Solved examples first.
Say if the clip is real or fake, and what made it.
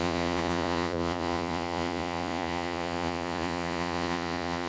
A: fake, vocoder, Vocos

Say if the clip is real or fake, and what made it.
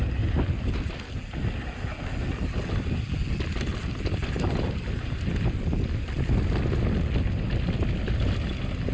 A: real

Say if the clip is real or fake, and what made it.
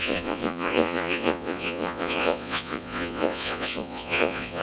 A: fake, vocoder, Vocos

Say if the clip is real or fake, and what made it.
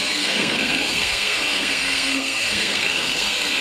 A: fake, codec, SNAC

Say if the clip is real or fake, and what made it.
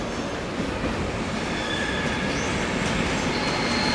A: real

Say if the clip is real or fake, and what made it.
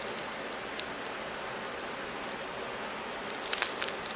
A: real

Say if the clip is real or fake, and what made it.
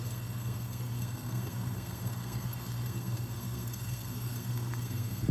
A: fake, codec, SNAC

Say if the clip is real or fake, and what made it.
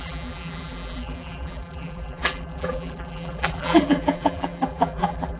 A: fake, vocoder, BigVGAN v2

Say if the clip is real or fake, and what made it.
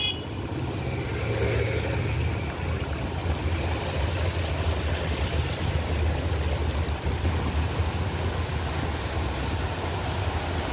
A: real